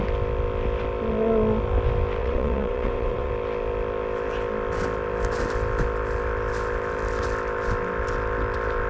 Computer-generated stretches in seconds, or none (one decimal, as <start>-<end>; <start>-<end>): 2.2-3.3

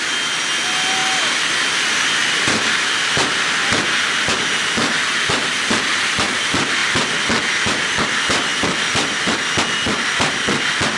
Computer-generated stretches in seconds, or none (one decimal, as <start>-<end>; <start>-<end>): 8.5-9.5

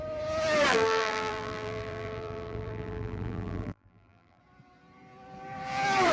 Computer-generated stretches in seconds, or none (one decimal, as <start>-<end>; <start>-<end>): 0.7-4.4

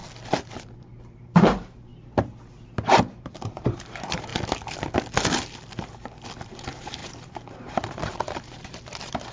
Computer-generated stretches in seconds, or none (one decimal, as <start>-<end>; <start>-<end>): 0.8-1.9; 3.2-4.3; 6.5-9.3

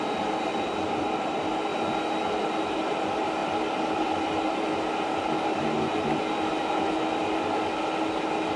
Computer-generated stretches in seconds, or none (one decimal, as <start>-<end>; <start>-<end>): none

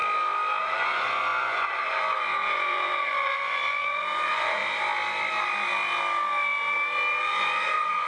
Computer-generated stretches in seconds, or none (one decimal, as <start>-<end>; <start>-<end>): 0.6-4.6; 7.2-8.1